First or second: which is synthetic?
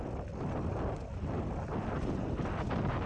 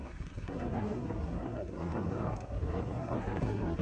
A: second